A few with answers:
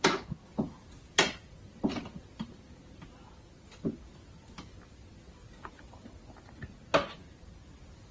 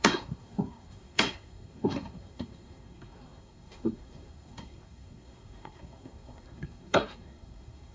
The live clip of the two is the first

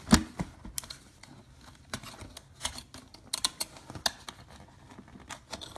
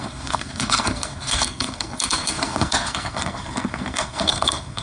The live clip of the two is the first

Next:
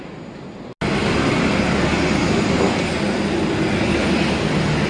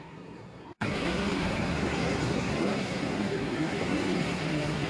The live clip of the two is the first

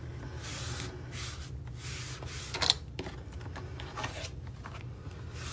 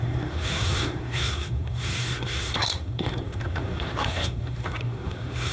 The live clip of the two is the first